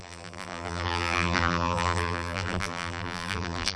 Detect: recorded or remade remade